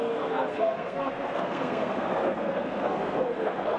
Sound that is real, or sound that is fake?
fake